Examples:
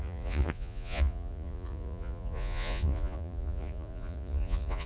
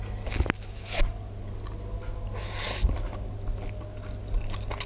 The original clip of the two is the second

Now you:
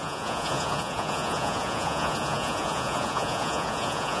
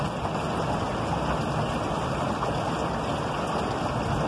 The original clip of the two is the second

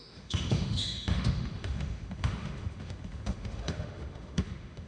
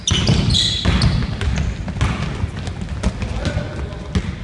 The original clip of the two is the second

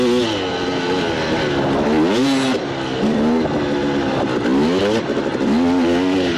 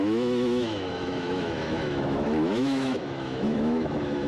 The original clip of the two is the first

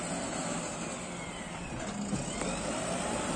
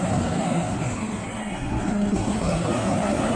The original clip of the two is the first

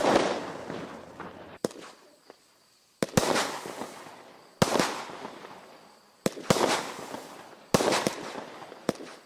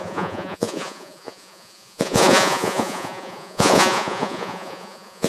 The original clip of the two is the first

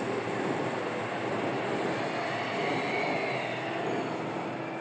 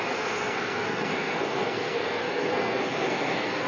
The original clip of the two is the first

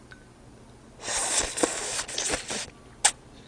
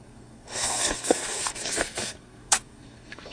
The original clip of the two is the first